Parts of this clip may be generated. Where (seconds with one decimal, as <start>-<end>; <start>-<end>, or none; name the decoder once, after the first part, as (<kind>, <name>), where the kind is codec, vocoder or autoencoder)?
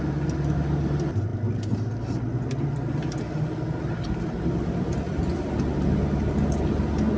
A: none